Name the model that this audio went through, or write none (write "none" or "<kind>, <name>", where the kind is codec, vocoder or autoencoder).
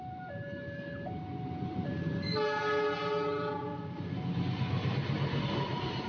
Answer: none